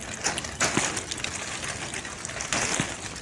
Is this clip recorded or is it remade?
recorded